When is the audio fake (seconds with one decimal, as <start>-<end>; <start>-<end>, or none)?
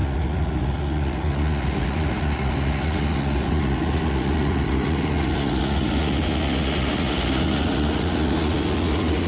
0.0-9.3